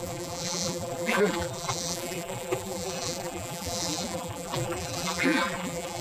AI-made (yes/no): yes